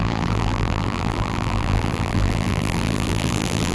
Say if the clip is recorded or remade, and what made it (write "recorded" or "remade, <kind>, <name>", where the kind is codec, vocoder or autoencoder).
remade, vocoder, BigVGAN v2